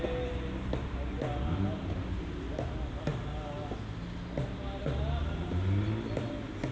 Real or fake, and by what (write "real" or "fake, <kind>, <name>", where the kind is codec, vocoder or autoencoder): real